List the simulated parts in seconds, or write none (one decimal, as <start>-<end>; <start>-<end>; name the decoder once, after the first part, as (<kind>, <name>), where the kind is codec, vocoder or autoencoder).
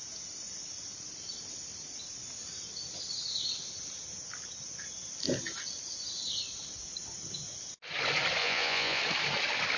8.4-9.0 (vocoder, Vocos)